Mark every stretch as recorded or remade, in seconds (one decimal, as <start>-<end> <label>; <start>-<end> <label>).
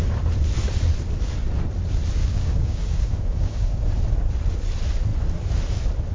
0.0-2.2 recorded; 2.2-3.9 remade; 3.9-6.1 recorded